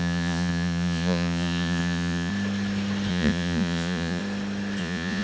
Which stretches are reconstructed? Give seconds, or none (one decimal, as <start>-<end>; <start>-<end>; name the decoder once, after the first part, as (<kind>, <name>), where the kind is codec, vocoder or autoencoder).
0.0-2.3 (vocoder, Vocos); 3.1-4.2; 4.8-5.2